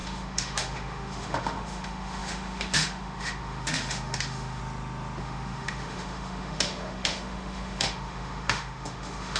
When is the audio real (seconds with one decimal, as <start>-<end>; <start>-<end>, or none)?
4.6-5.2